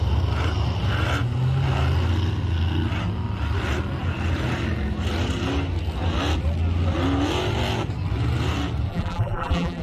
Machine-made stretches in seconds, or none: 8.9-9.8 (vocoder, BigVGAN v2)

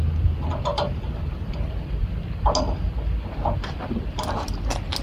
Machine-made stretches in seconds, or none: 0.7-1.5 (vocoder, BigVGAN v2)